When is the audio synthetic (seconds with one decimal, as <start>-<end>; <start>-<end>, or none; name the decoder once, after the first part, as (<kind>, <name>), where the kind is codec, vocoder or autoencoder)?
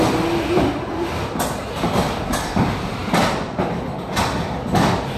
none